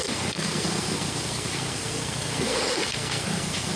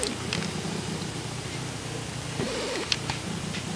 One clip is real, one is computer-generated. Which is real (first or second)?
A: second